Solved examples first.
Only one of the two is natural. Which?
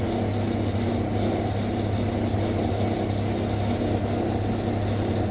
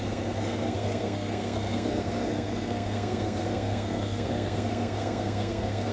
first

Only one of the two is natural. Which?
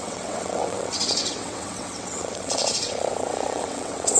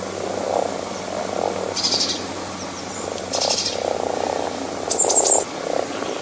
second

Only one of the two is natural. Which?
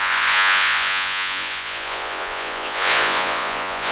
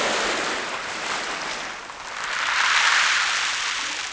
second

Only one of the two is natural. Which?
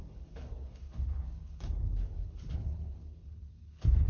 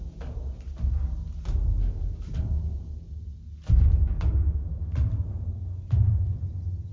second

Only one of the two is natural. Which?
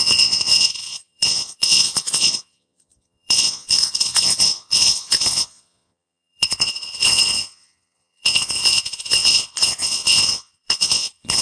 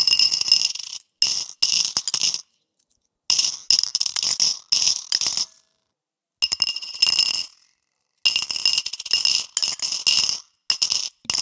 second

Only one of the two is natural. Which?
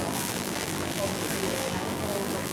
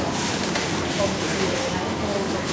second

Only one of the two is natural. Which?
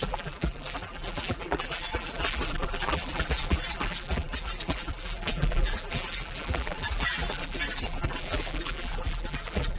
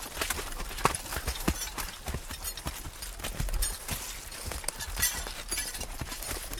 second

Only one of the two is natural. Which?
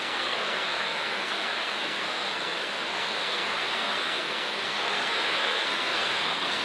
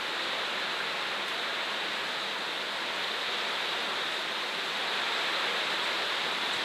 second